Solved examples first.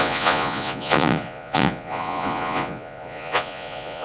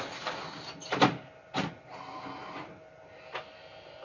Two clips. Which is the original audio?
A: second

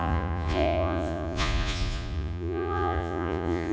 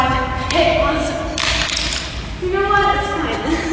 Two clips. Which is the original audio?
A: second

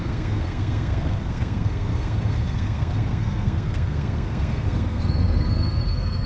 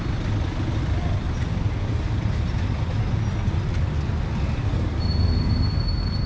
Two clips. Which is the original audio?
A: second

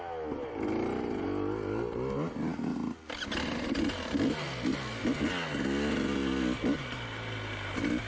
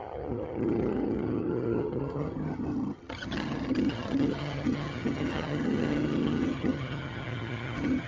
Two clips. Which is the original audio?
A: first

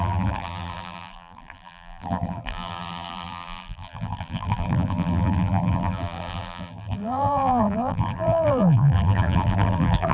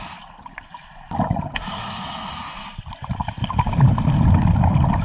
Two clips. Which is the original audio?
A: second